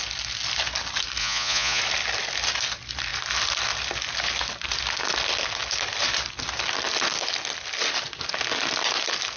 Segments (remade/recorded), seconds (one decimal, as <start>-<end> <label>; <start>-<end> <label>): 0.0-1.2 recorded; 1.2-1.8 remade; 1.8-9.4 recorded

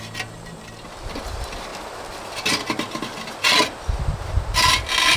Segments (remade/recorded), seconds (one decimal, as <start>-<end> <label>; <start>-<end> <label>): 0.0-5.2 recorded

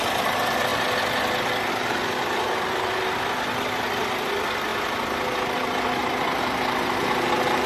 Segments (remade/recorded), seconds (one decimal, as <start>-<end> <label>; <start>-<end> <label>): 0.0-7.7 recorded

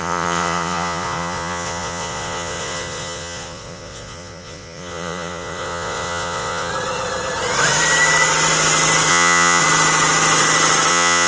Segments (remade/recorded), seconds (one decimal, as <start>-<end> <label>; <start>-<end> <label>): 0.0-6.7 remade; 6.7-9.1 recorded; 9.1-9.6 remade; 9.6-10.9 recorded; 10.9-11.3 remade

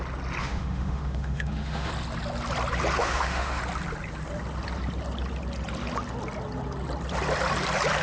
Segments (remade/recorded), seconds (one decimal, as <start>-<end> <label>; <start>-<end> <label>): 0.0-0.4 recorded; 0.4-1.9 remade; 1.9-3.0 recorded; 3.0-3.6 remade; 3.6-8.0 recorded

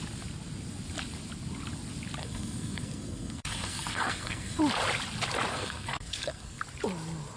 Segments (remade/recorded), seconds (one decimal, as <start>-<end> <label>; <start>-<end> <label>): 0.0-2.2 recorded; 2.2-4.6 remade; 4.6-5.5 recorded; 5.5-6.6 remade; 6.6-7.4 recorded

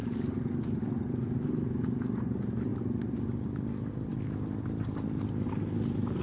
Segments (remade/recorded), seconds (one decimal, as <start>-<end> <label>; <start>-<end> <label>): 0.0-6.2 recorded